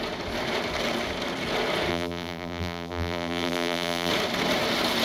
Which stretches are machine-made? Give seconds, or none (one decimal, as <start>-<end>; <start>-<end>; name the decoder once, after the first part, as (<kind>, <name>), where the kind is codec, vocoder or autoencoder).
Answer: 1.9-4.1 (vocoder, BigVGAN v2)